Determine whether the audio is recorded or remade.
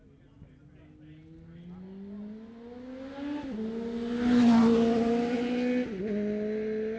recorded